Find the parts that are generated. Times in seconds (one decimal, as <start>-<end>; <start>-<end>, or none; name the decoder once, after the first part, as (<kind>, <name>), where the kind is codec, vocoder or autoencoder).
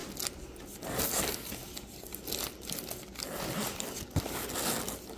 none